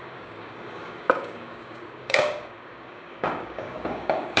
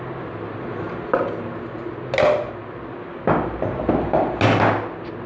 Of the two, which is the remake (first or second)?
first